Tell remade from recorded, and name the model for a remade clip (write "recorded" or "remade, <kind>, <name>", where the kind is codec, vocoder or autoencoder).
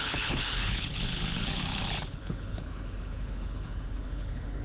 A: remade, codec, HILCodec